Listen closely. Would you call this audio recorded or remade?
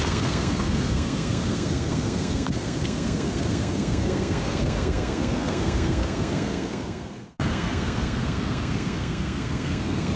remade